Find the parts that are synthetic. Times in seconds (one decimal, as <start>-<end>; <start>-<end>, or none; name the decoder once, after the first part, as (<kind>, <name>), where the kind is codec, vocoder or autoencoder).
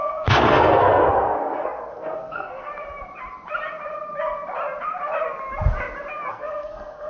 0.0-2.7 (codec, SNAC); 6.3-7.1